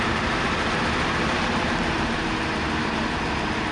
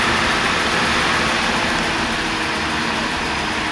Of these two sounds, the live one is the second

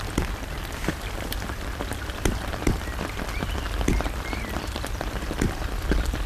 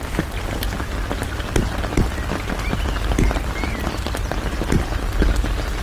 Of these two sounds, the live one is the second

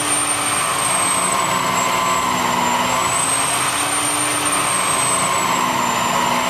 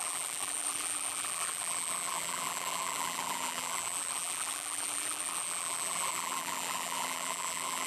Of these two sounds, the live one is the first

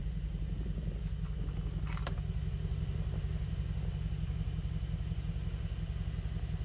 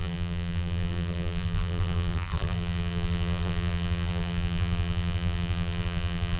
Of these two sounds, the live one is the first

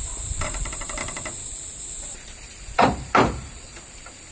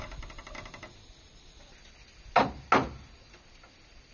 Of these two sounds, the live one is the second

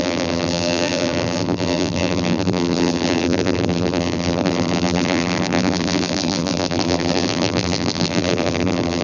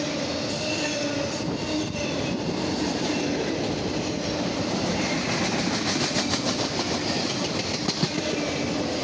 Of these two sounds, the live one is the second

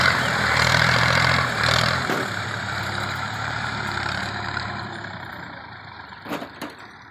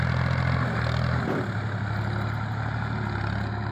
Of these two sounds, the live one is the second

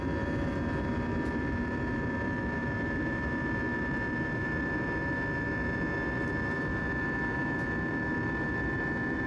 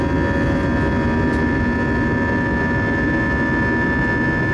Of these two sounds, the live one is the second